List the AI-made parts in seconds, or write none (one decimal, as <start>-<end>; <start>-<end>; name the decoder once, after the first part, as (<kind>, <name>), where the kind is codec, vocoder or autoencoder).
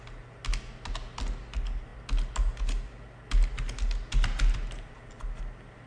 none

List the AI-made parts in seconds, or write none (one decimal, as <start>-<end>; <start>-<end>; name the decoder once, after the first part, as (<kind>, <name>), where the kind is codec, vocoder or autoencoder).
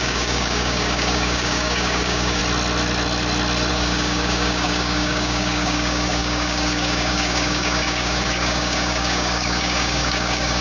0.0-2.4 (codec, DAC); 3.7-10.6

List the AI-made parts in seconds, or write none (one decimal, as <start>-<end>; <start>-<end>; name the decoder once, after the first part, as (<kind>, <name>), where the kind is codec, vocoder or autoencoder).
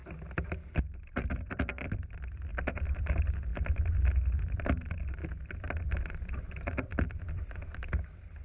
0.0-3.5 (vocoder, BigVGAN v2); 4.3-5.2; 6.2-8.4